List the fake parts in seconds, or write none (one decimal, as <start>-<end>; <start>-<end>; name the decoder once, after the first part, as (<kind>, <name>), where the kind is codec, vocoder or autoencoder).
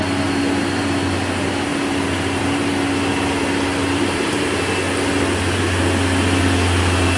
3.8-4.5 (vocoder, BigVGAN v2)